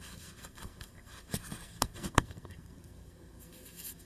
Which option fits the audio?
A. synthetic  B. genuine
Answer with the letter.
A